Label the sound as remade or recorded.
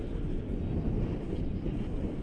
recorded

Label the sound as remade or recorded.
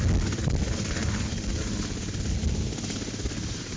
recorded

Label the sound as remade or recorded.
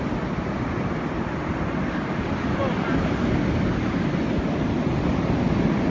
recorded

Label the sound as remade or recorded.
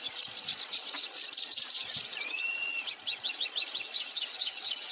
remade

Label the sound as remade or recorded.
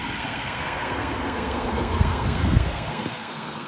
remade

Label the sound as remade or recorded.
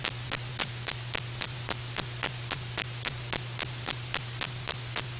recorded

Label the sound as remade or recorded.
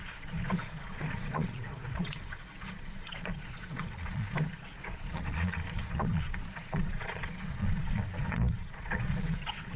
remade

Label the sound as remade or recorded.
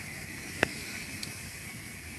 remade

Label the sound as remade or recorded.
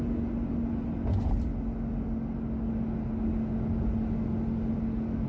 recorded